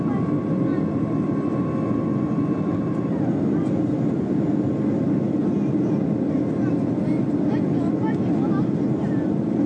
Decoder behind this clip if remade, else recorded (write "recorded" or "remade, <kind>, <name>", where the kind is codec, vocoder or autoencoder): recorded